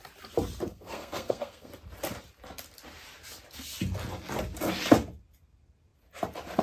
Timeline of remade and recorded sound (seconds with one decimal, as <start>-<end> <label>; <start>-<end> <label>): 0.0-0.7 recorded; 0.7-1.7 remade; 1.7-6.6 recorded